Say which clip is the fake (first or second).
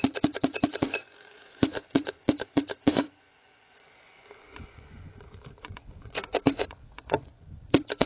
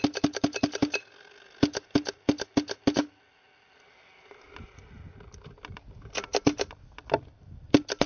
first